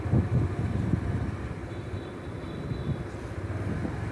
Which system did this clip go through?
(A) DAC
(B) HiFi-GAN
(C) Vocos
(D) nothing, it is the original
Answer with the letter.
D